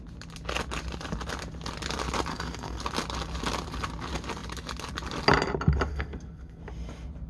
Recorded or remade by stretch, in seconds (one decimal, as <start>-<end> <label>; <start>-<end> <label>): 0.0-2.3 recorded; 2.3-2.8 remade; 2.8-5.9 recorded; 5.9-6.6 remade; 6.6-7.3 recorded